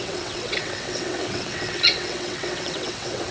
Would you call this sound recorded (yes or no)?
no